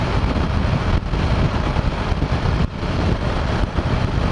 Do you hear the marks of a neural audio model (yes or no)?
no